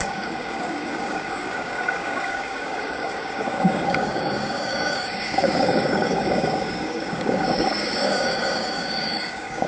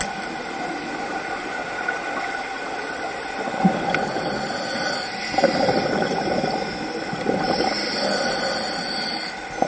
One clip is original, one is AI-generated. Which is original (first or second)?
second